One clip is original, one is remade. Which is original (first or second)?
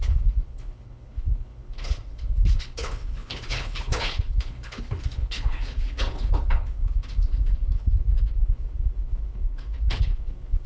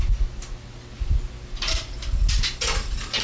second